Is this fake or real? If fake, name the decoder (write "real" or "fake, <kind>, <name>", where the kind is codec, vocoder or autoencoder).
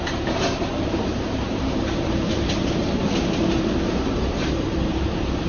fake, vocoder, BigVGAN v2